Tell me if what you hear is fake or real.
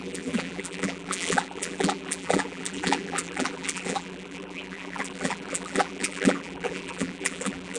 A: fake